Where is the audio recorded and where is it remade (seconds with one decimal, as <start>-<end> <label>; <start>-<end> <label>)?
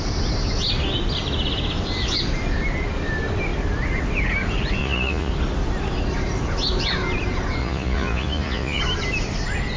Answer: 0.0-4.8 recorded; 4.8-5.3 remade; 5.3-7.6 recorded; 7.6-8.8 remade; 8.8-9.8 recorded